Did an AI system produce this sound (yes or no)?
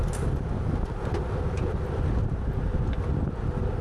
no